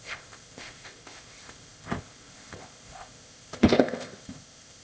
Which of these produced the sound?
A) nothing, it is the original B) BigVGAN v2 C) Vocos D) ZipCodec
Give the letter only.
D